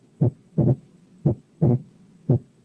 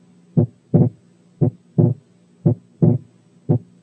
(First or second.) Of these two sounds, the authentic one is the second